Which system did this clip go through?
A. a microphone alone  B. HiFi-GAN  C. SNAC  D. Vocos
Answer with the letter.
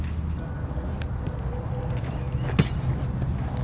A